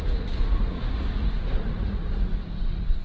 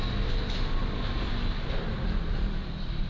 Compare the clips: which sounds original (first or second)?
second